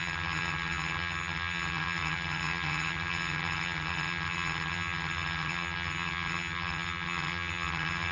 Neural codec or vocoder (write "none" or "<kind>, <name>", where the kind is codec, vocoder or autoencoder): vocoder, HiFi-GAN